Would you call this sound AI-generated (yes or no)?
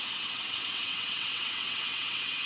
yes